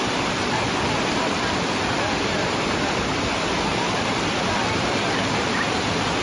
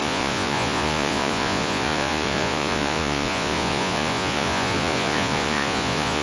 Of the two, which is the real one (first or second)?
first